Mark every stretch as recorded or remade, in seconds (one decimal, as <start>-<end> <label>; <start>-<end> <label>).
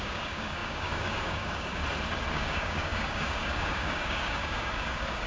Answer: 0.0-1.8 remade; 1.8-2.3 recorded; 2.3-5.3 remade